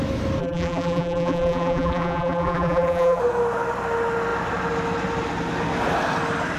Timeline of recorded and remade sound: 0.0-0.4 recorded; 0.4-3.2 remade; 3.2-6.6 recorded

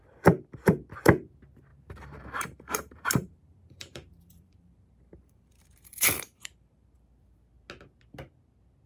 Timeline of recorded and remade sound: 0.0-1.7 recorded; 1.7-6.9 remade; 6.9-8.9 recorded

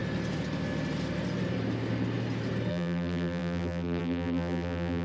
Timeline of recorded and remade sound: 0.0-2.7 recorded; 2.7-5.0 remade

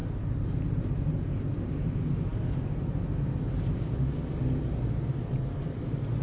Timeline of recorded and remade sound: 0.0-1.1 remade; 1.1-2.3 recorded; 2.3-3.9 remade; 3.9-5.1 recorded; 5.1-5.8 remade; 5.8-6.2 recorded